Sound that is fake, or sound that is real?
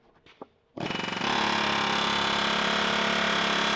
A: real